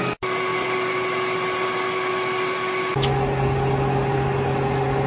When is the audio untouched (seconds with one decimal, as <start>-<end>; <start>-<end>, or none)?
0.0-5.1